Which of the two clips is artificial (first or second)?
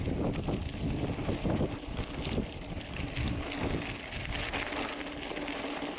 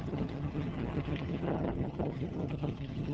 second